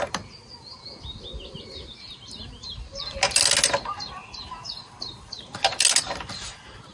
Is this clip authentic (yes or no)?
yes